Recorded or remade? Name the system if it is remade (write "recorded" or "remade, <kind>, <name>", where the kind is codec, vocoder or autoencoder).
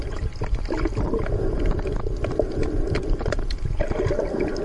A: recorded